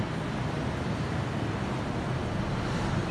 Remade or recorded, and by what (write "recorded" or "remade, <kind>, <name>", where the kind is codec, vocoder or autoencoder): recorded